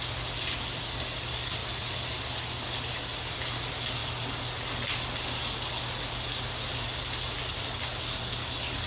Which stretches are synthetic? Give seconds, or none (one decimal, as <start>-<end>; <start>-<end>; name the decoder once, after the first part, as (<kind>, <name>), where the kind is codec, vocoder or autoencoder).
none